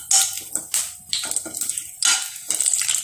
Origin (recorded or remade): recorded